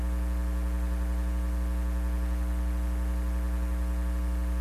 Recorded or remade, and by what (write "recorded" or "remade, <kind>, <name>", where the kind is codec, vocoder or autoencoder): recorded